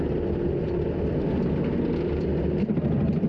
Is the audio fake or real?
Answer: real